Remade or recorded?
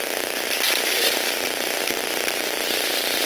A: recorded